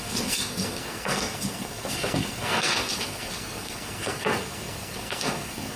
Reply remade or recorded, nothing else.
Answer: remade